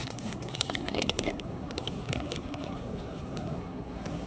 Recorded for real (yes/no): no